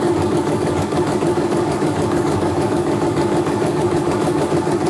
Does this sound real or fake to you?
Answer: fake